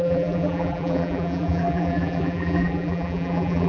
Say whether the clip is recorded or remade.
remade